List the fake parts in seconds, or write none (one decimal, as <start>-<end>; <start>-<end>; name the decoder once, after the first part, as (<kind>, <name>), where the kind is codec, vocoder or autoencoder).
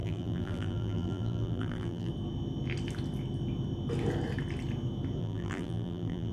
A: 0.0-2.1 (vocoder, BigVGAN v2); 5.2-6.3